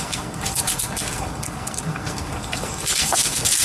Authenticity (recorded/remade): remade